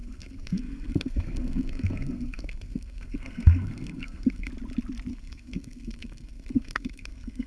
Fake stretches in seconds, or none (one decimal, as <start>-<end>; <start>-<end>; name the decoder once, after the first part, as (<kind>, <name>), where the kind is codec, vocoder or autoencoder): 0.0-4.5 (codec, SNAC); 5.1-7.5